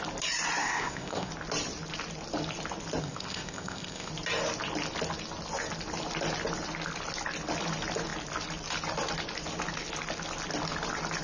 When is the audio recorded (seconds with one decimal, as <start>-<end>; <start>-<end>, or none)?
0.0-0.6; 1.3-3.0; 4.1-11.2